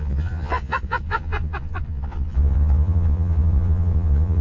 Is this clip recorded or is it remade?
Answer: remade